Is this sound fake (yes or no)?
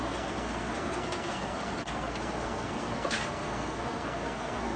yes